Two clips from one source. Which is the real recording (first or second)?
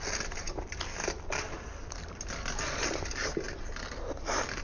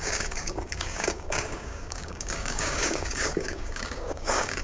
first